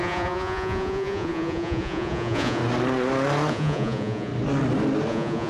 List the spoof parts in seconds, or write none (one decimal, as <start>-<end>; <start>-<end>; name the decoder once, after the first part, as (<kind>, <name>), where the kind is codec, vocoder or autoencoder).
0.0-2.6 (vocoder, Vocos); 3.5-4.3; 5.1-5.5